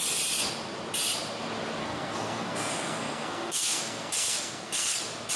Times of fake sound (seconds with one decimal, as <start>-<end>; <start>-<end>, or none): 1.8-5.0